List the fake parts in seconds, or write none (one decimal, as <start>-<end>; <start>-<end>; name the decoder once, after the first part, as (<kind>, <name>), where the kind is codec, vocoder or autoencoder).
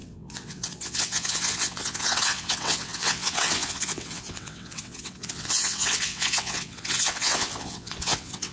0.0-8.5 (vocoder, WaveNeXt)